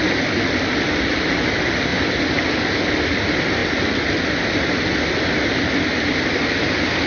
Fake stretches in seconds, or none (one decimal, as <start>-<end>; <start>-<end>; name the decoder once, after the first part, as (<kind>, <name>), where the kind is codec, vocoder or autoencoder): none